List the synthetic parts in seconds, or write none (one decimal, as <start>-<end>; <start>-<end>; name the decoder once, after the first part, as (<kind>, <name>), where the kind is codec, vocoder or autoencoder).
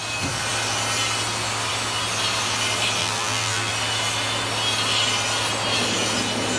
3.0-3.7 (vocoder, BigVGAN v2)